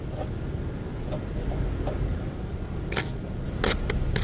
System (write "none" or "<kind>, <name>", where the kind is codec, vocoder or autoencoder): none